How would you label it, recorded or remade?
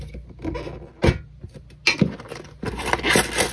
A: recorded